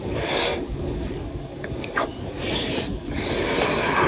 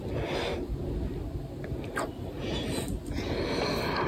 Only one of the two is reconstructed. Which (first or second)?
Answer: first